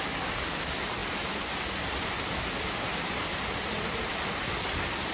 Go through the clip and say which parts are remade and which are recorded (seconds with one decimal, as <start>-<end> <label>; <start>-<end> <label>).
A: 0.0-5.1 recorded